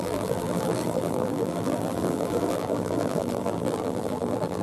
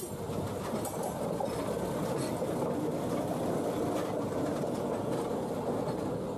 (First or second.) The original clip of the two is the second